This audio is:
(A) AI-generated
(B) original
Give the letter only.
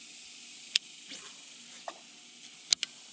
B